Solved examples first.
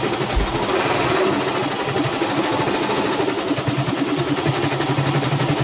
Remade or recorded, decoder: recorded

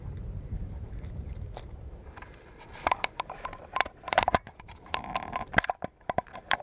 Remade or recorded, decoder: remade, vocoder, BigVGAN v2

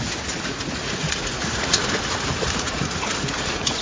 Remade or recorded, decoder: remade, vocoder, Vocos